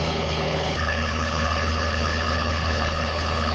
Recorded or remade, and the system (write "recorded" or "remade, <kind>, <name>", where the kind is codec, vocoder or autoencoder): remade, codec, HILCodec